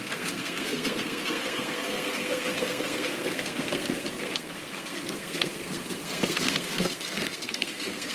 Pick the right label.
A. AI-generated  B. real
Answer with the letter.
A